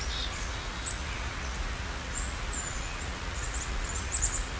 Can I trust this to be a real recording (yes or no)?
no